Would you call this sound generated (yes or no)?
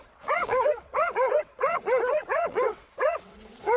yes